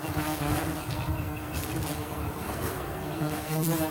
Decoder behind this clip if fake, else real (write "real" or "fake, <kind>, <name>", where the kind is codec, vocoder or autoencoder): fake, codec, SNAC